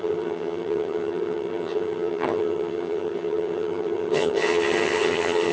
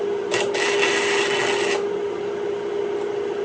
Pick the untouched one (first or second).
second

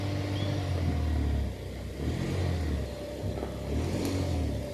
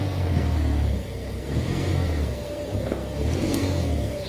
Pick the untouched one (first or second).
first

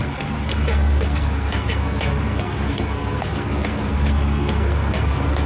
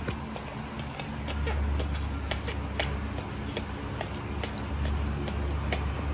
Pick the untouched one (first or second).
second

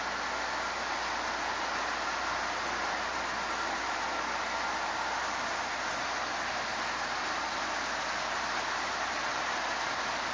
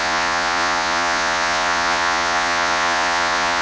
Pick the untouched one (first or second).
first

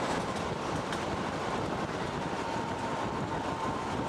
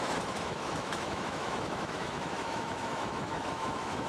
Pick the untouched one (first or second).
first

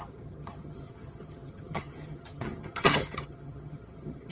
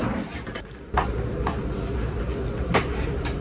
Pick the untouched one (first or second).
second